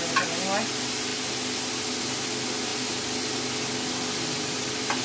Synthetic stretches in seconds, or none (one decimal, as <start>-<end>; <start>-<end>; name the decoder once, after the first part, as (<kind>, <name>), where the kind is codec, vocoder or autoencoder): none